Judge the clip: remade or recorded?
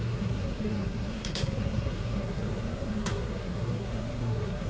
remade